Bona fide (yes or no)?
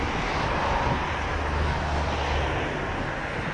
yes